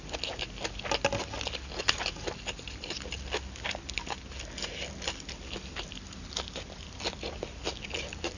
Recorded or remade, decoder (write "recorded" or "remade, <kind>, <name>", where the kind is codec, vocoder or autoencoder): recorded